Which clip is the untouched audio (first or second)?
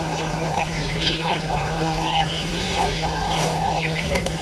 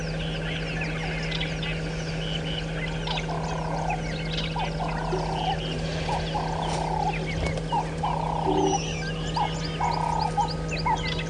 second